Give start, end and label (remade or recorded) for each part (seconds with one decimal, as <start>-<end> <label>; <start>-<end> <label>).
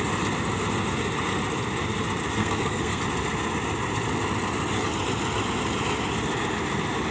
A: 0.0-2.4 recorded; 2.4-3.0 remade; 3.0-7.1 recorded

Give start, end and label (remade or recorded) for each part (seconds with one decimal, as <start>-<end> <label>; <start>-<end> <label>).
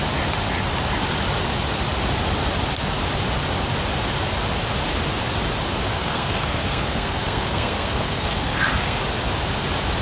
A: 0.0-5.9 recorded; 5.9-9.0 remade; 9.0-10.0 recorded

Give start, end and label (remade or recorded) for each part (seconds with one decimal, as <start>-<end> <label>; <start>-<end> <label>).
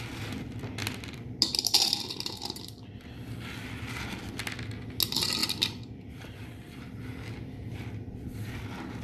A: 0.0-9.0 recorded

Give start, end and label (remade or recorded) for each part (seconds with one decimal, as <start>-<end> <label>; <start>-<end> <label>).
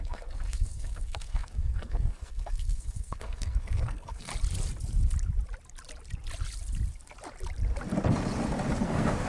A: 0.0-4.3 remade; 4.3-8.8 recorded; 8.8-9.3 remade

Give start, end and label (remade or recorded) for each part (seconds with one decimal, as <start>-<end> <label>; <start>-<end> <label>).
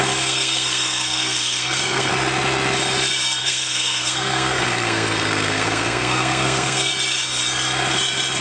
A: 0.0-2.1 remade; 2.1-3.4 recorded; 3.4-6.9 remade; 6.9-8.4 recorded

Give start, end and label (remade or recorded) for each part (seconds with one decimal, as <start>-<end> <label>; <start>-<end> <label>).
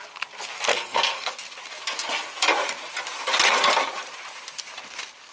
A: 0.0-0.7 recorded; 0.7-1.3 remade; 1.3-5.3 recorded